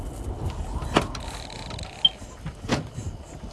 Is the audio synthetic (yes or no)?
no